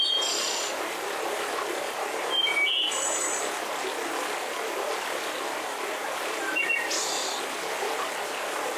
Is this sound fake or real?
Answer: real